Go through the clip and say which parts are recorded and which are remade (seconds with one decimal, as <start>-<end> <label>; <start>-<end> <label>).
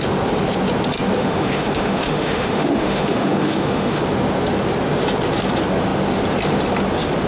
0.0-1.2 recorded; 1.2-4.0 remade; 4.0-7.3 recorded